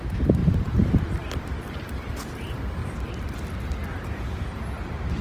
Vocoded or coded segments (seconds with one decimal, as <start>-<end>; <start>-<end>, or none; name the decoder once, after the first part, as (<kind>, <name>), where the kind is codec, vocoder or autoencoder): none